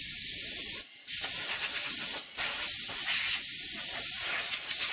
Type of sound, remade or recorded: recorded